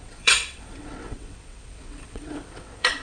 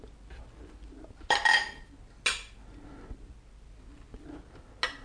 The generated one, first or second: first